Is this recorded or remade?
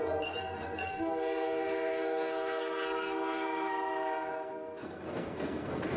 remade